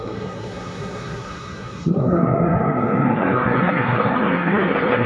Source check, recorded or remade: remade